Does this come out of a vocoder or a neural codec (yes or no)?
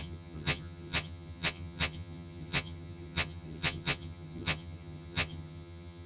yes